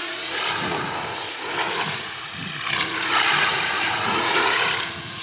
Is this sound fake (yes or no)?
yes